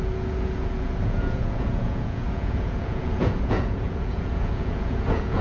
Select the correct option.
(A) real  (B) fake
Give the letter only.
B